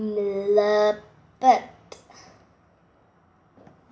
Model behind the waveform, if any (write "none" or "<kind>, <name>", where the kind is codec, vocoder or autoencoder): none